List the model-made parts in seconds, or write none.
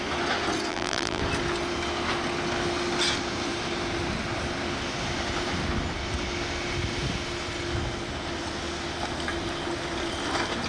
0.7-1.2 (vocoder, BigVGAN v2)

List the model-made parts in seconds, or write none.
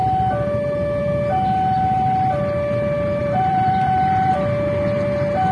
3.2-4.3 (vocoder, BigVGAN v2)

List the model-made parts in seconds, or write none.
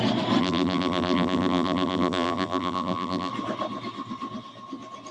0.4-3.3 (vocoder, BigVGAN v2)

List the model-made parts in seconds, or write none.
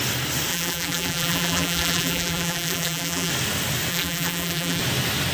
0.5-3.3 (vocoder, BigVGAN v2); 3.9-4.8